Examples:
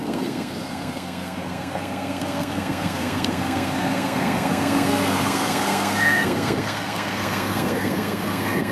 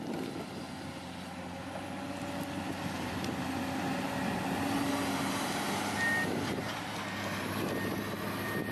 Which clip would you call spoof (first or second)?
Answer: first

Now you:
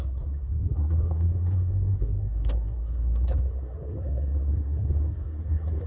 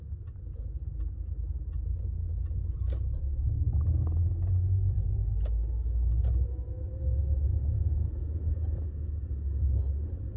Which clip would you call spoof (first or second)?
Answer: first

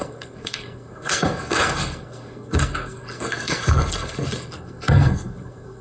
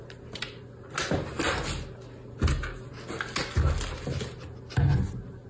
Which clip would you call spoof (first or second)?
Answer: first